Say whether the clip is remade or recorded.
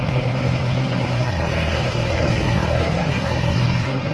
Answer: remade